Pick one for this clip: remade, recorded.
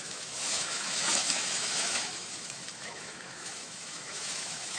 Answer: remade